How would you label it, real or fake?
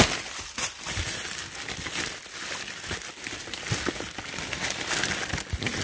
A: real